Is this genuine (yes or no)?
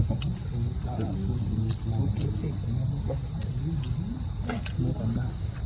yes